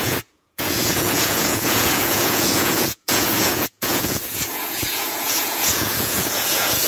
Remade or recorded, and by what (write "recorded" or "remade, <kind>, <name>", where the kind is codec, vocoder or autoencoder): remade, vocoder, Vocos